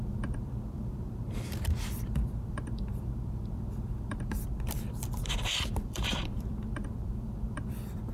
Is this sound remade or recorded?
remade